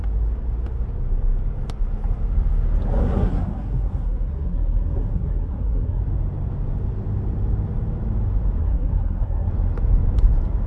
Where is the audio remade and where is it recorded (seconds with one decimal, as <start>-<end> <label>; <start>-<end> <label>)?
0.0-3.0 recorded; 3.0-6.0 remade; 6.0-8.6 recorded; 8.6-9.5 remade; 9.5-10.7 recorded